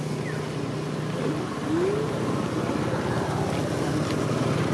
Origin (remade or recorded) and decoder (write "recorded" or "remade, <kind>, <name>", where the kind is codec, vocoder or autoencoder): recorded